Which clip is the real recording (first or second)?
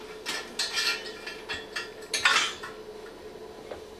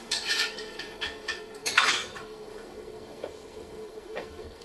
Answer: first